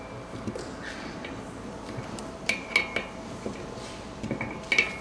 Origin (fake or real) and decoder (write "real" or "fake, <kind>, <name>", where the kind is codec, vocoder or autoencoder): real